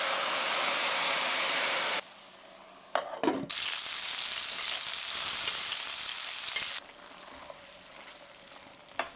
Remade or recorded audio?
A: recorded